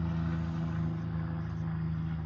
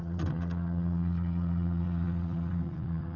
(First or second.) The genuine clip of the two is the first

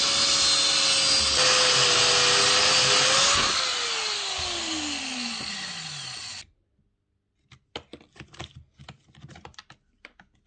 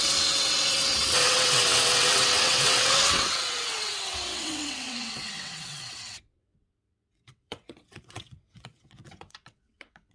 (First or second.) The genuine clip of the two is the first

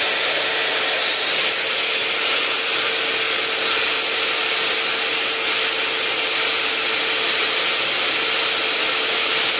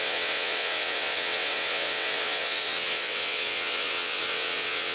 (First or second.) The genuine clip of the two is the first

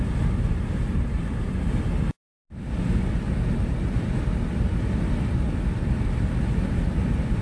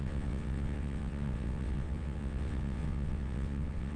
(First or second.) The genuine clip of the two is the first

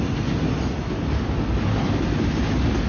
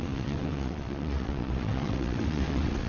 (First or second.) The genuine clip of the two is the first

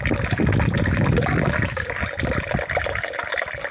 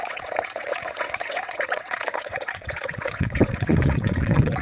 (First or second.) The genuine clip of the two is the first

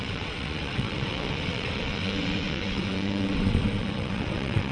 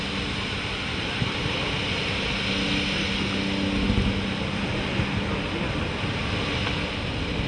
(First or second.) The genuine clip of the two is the second